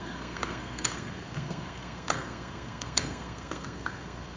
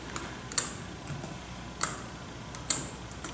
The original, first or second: second